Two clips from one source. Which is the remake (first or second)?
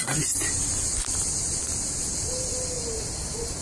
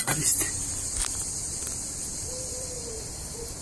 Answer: second